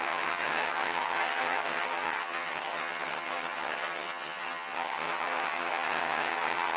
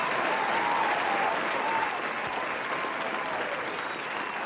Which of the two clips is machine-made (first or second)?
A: first